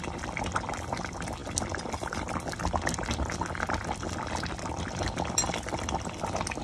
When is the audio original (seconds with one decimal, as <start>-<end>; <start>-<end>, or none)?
0.0-6.6